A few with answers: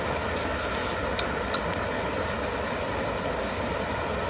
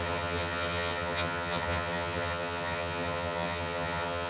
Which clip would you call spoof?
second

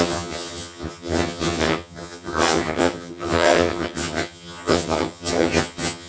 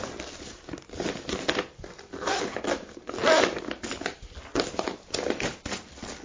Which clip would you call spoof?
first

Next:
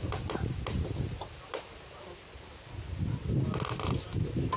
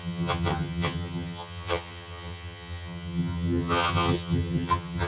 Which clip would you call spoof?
second